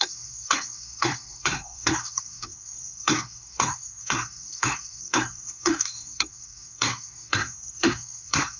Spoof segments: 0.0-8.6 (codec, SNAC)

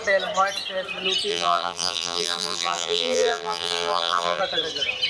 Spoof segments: 1.3-4.4 (vocoder, BigVGAN v2)

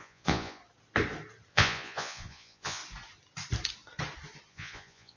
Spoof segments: 0.0-0.6 (vocoder, Vocos); 1.5-2.8; 4.5-5.2

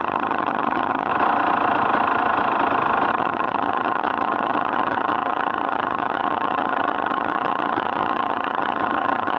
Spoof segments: 0.0-1.1 (vocoder, HiFi-GAN); 3.1-9.4

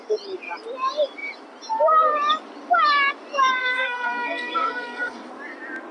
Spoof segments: 3.6-5.3 (codec, SNAC)

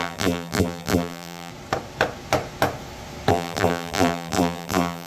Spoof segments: 0.0-1.5 (vocoder, BigVGAN v2); 3.3-5.1

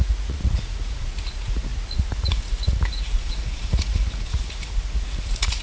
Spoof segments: 0.0-5.6 (vocoder, Vocos)